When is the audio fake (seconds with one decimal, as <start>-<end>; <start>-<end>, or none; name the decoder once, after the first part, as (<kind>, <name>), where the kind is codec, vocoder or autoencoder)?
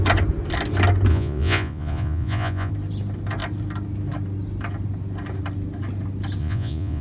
1.1-2.7 (vocoder, Vocos); 6.4-7.0